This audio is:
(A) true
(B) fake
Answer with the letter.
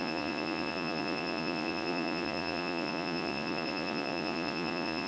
B